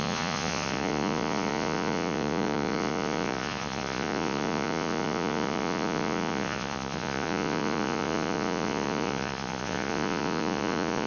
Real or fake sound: fake